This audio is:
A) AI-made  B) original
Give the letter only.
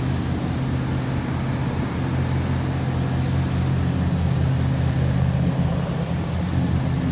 B